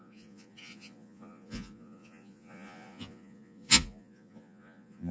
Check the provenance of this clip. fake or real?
fake